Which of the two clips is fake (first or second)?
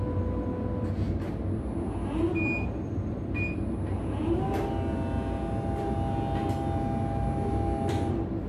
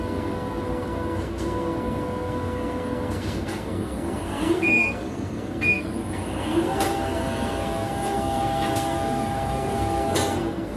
second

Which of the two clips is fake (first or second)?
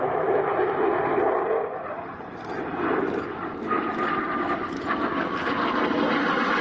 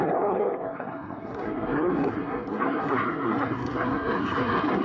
second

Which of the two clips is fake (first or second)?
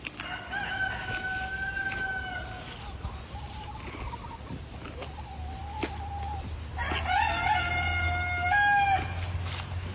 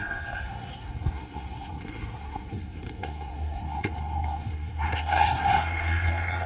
second